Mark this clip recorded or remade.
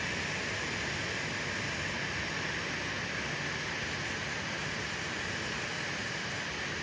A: recorded